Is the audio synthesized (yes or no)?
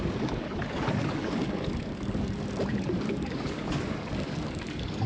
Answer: yes